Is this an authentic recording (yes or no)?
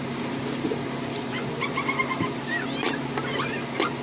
yes